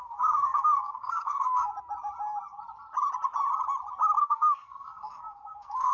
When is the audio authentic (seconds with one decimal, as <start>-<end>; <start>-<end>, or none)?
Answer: 1.7-4.2